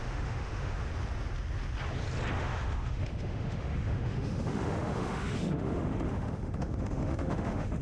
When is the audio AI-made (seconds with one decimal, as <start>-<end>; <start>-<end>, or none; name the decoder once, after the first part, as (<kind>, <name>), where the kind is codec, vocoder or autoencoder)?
0.0-0.9 (autoencoder, DAC-VAE); 2.3-7.8